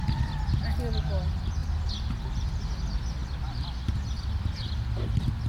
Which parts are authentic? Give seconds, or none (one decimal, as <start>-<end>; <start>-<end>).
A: 0.0-5.5